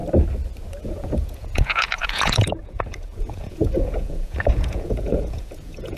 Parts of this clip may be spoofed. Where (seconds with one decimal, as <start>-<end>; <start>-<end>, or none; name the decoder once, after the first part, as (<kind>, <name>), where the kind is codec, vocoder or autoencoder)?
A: 0.8-6.0 (vocoder, Vocos)